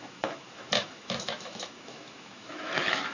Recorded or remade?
remade